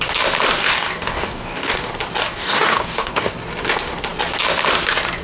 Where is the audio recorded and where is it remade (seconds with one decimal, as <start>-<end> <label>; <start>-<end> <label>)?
0.0-0.6 recorded; 0.6-1.8 remade; 1.8-2.2 recorded; 2.2-3.3 remade; 3.3-5.2 recorded